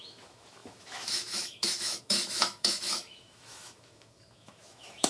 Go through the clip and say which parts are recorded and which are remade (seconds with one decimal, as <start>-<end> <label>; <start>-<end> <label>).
0.0-5.1 remade